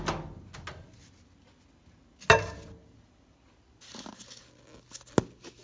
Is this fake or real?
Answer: real